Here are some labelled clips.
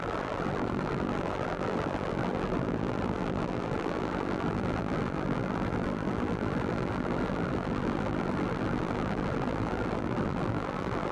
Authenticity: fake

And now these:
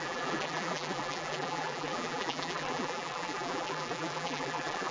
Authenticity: fake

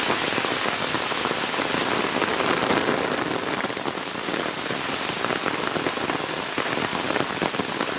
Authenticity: real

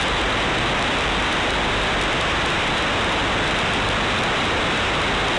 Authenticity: real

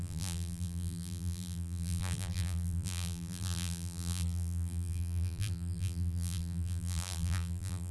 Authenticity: fake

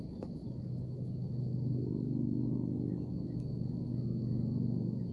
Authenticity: fake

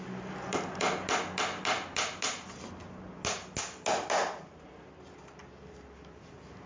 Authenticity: real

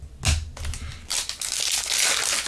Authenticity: real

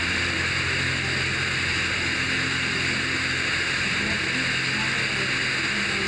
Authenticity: real